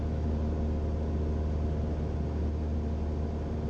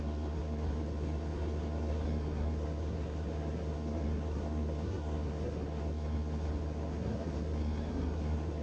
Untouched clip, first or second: first